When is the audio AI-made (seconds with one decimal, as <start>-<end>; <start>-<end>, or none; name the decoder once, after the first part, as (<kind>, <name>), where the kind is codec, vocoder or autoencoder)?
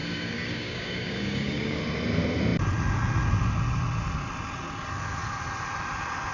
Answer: 0.0-1.8 (codec, DAC)